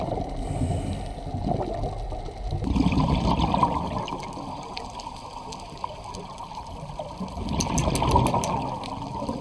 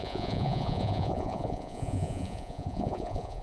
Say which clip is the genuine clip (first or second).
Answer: first